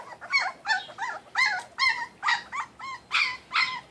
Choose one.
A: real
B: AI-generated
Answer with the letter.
A